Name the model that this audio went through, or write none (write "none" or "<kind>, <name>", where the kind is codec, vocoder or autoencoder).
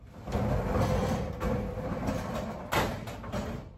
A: none